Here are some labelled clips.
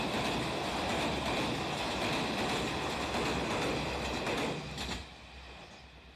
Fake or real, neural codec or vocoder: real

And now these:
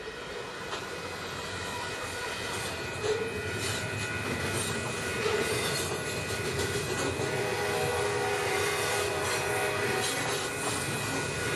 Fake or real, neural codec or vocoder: real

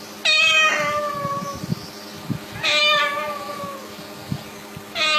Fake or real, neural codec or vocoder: real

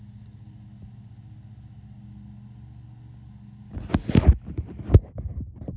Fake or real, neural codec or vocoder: real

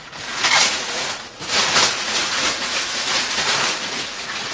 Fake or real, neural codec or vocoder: fake, vocoder, Vocos